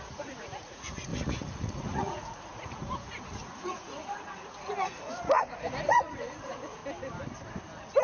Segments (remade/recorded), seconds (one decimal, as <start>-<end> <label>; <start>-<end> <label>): 0.0-6.8 remade; 6.8-8.0 recorded